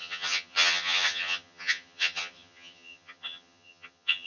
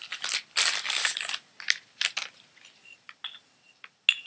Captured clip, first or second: second